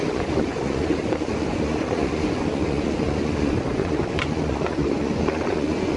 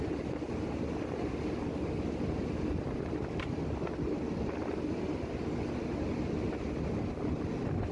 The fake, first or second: first